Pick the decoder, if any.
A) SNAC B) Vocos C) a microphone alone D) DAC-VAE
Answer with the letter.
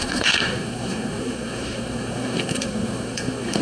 A